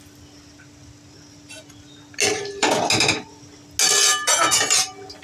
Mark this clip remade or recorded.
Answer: recorded